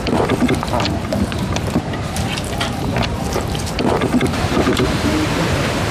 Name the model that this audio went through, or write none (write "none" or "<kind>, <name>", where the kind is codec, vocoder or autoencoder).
vocoder, BigVGAN v2